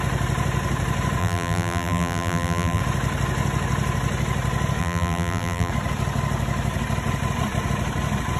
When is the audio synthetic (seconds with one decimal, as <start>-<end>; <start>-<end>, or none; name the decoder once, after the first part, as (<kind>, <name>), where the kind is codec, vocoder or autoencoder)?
1.2-2.8 (vocoder, BigVGAN v2); 4.8-5.7